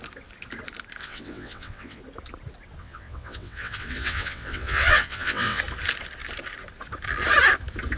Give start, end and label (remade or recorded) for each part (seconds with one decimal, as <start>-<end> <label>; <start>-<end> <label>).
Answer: 0.0-1.0 recorded; 1.0-2.0 remade; 2.0-2.8 recorded; 2.8-5.6 remade; 5.6-8.0 recorded